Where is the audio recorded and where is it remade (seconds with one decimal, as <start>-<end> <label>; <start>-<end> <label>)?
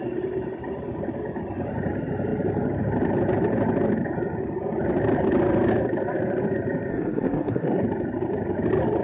0.0-6.9 recorded; 6.9-7.8 remade; 7.8-9.0 recorded